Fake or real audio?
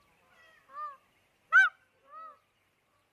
real